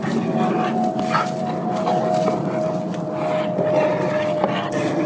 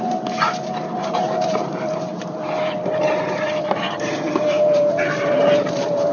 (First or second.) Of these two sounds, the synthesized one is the second